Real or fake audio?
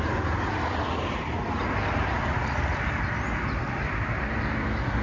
real